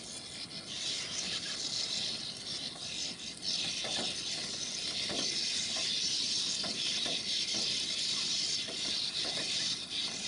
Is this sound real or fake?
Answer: real